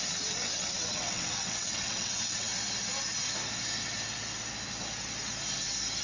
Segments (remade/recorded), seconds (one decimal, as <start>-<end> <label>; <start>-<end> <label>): 0.0-2.5 remade; 2.5-6.0 recorded